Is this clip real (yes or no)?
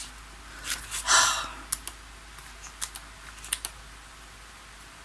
yes